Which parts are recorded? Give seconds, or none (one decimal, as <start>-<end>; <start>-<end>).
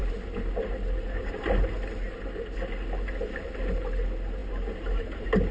0.0-5.5